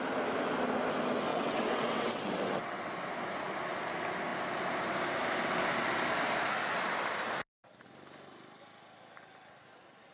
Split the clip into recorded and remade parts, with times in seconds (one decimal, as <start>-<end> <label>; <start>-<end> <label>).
0.0-1.3 recorded; 1.3-2.9 remade; 2.9-10.1 recorded

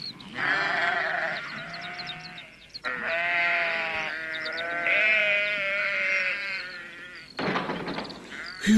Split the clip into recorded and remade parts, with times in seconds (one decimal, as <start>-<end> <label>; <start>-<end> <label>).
0.0-8.8 recorded

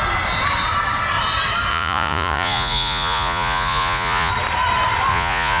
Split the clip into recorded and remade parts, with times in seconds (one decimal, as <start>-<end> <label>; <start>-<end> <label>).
0.0-1.7 recorded; 1.7-4.3 remade; 4.3-5.1 recorded; 5.1-5.6 remade

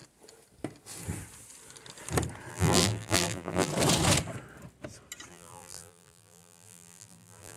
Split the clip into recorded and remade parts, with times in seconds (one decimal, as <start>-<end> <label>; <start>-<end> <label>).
0.0-2.5 recorded; 2.5-3.7 remade; 3.7-5.3 recorded; 5.3-7.6 remade